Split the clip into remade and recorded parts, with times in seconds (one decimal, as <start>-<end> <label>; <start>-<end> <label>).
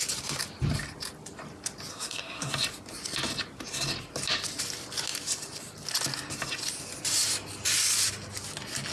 0.0-1.9 recorded; 1.9-2.5 remade; 2.5-8.9 recorded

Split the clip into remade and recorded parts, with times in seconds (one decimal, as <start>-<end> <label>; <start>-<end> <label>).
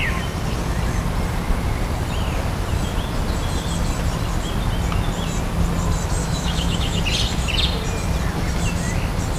0.0-6.2 recorded; 6.2-7.0 remade; 7.0-9.4 recorded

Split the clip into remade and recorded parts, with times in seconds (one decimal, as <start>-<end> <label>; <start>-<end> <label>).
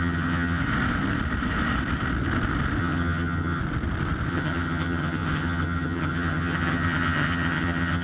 0.0-0.6 remade; 0.6-2.8 recorded; 2.8-3.6 remade; 3.6-4.3 recorded; 4.3-8.0 remade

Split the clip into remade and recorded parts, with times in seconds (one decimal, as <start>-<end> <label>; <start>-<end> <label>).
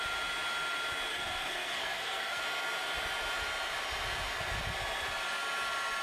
0.0-1.1 recorded; 1.1-2.4 remade; 2.4-6.0 recorded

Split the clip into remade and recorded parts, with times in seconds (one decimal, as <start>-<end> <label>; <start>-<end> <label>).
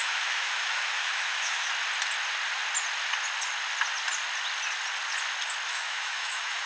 0.0-1.7 remade; 1.7-5.7 recorded; 5.7-6.7 remade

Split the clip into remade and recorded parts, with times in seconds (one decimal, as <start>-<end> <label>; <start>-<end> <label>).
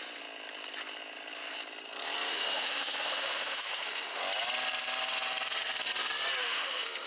0.0-2.3 recorded; 2.3-4.2 remade; 4.2-6.4 recorded; 6.4-7.1 remade